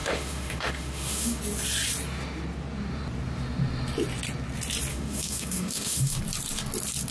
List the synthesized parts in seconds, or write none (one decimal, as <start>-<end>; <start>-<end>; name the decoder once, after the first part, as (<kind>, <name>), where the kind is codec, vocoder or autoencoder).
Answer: 0.0-1.4 (autoencoder, DAC-VAE); 4.9-6.2